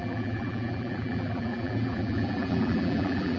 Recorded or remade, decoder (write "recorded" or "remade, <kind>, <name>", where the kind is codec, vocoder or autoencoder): remade, vocoder, BigVGAN v2